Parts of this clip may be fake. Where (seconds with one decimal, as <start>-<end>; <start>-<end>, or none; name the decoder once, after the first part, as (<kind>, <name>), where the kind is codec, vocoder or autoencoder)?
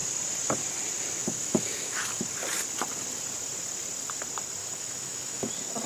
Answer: 1.2-2.2 (autoencoder, DAC-VAE); 4.6-5.5